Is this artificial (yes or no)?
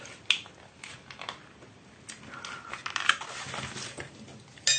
no